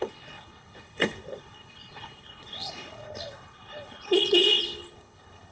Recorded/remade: remade